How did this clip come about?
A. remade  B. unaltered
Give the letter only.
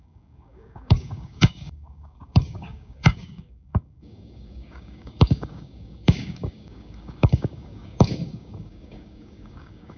A